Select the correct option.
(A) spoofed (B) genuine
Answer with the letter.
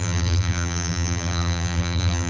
A